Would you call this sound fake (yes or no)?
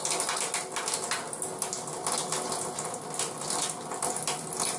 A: no